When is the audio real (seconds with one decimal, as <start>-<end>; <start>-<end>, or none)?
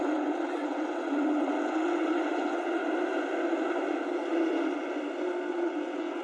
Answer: 2.8-5.5